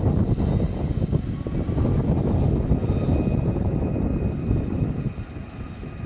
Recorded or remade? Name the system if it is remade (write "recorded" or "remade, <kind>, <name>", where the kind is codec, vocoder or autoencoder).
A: recorded